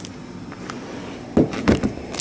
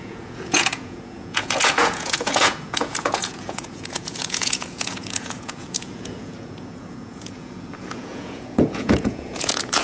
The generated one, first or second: second